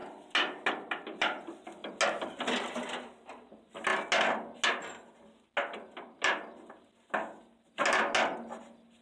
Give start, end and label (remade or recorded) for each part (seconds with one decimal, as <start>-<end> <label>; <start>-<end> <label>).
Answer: 0.0-9.0 recorded